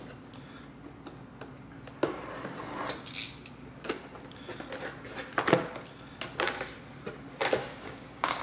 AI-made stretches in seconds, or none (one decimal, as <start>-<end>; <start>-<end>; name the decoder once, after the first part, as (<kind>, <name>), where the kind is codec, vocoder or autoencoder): 7.6-8.4 (codec, DAC)